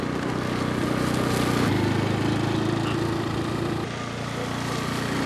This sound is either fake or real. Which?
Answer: real